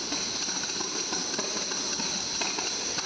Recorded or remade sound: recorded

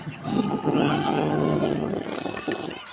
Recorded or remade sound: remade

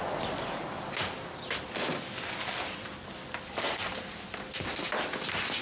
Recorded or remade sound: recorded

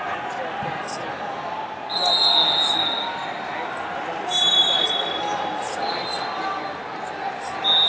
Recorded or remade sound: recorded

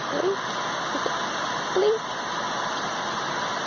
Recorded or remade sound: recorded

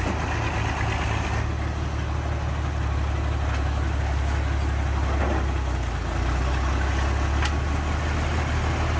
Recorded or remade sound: recorded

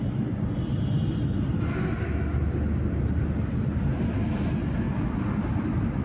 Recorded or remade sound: recorded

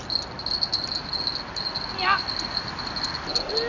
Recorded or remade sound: recorded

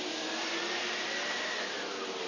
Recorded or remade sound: recorded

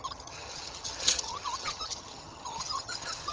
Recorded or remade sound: remade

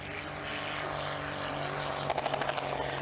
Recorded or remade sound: recorded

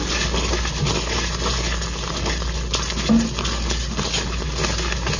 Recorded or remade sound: recorded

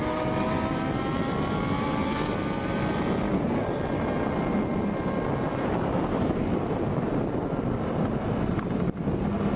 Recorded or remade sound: recorded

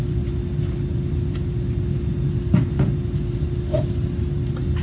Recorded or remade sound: recorded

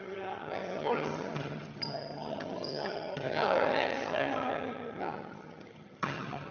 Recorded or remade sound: remade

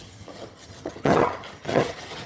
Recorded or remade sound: remade